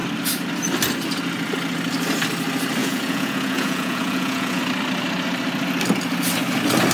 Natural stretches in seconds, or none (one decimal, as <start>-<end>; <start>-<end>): 0.0-2.8; 4.6-6.9